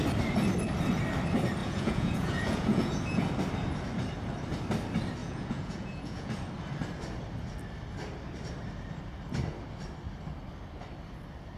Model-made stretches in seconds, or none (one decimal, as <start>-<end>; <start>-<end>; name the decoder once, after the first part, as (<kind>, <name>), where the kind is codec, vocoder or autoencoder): 1.6-3.3 (vocoder, Vocos); 5.2-6.4